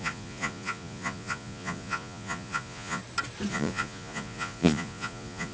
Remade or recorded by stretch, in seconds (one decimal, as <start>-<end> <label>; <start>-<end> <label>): 0.0-3.0 remade; 3.0-3.5 recorded; 3.5-5.5 remade